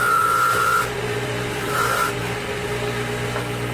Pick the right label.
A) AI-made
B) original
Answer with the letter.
B